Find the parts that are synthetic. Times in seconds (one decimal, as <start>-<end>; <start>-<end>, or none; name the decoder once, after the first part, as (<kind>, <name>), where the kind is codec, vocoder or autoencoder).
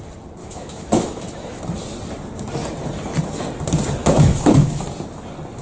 0.4-1.6 (autoencoder, DAC-VAE); 4.0-4.8